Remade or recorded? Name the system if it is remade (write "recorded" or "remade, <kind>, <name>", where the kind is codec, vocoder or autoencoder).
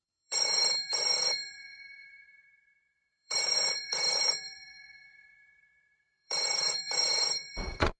remade, vocoder, Vocos